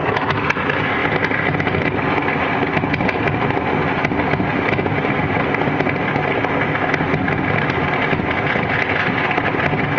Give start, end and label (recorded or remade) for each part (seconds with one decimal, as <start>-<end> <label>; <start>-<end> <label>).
0.0-10.0 recorded